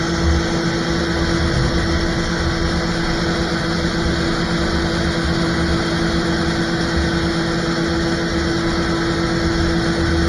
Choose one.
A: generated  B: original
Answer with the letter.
B